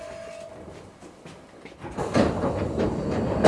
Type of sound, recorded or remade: recorded